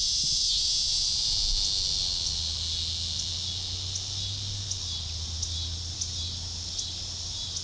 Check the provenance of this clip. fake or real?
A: real